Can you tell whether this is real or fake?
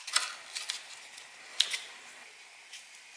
real